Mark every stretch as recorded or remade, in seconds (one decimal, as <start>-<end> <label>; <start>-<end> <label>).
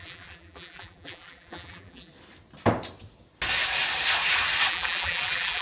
0.0-2.1 remade; 2.1-4.7 recorded; 4.7-5.6 remade